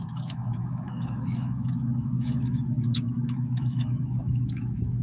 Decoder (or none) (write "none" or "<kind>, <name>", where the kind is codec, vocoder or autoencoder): autoencoder, DAC-VAE